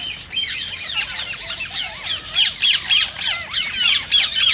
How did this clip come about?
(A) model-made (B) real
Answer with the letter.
B